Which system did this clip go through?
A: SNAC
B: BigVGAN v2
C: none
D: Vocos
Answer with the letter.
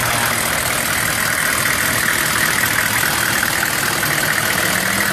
C